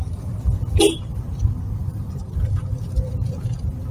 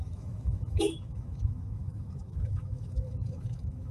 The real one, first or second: first